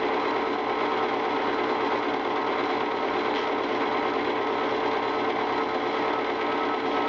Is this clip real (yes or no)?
yes